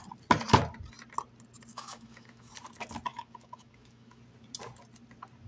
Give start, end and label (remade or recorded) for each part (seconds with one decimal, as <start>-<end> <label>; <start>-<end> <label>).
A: 0.0-1.7 recorded; 1.7-2.5 remade; 2.5-3.1 recorded; 3.1-4.2 remade; 4.2-5.5 recorded